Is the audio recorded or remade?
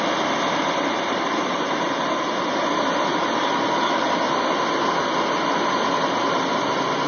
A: recorded